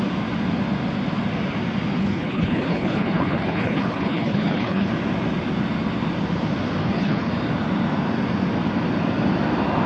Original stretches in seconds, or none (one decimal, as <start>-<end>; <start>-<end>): 0.0-2.0; 4.9-6.8; 7.3-9.9